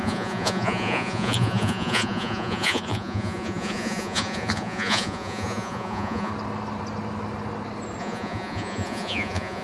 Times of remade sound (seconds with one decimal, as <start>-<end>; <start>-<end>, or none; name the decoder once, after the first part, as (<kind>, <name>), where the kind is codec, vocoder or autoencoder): 0.0-6.3 (vocoder, Vocos); 8.0-9.6